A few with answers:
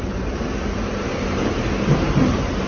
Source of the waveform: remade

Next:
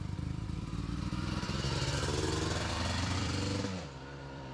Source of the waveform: remade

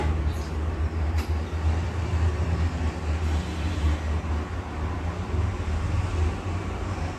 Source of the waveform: recorded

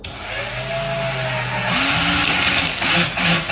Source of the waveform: recorded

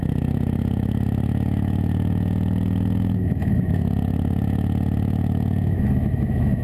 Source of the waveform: remade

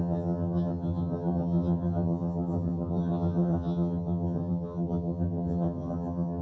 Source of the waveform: remade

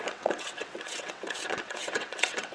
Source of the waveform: remade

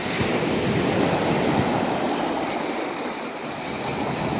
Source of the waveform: recorded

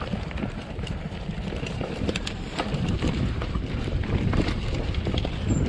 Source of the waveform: remade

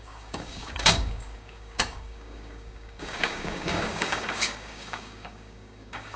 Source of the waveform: remade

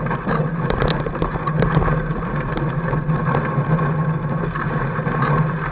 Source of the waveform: recorded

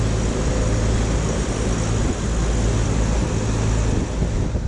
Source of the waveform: recorded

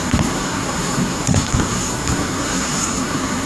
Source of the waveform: remade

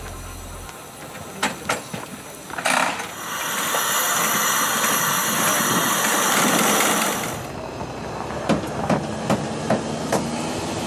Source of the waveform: recorded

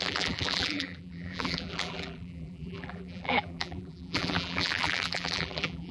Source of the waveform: remade